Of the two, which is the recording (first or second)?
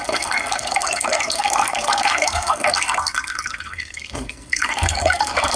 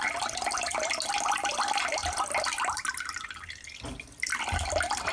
second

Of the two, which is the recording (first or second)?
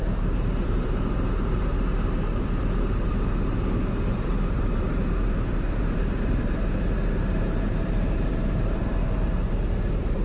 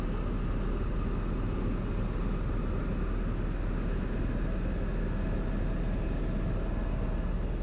second